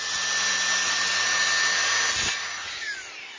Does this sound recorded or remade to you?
recorded